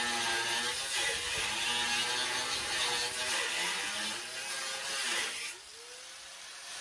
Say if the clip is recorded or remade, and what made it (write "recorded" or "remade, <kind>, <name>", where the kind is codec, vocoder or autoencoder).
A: recorded